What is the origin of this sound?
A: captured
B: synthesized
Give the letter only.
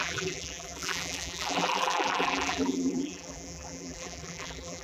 B